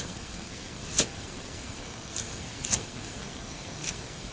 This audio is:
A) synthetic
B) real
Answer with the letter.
A